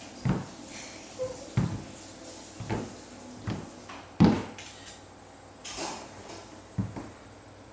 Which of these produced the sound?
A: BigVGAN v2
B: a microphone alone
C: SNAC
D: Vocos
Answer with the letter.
B